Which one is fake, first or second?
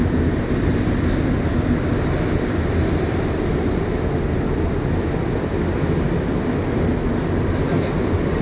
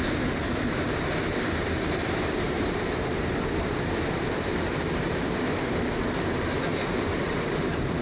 second